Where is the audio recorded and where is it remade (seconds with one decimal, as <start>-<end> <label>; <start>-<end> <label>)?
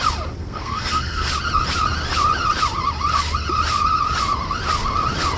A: 0.0-0.4 recorded; 0.4-1.3 remade; 1.3-5.4 recorded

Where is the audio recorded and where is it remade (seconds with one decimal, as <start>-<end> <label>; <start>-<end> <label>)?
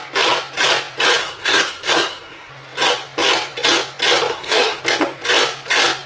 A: 0.0-1.2 recorded; 1.2-2.5 remade; 2.5-4.3 recorded; 4.3-4.8 remade; 4.8-6.1 recorded